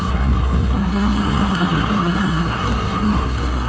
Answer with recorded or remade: remade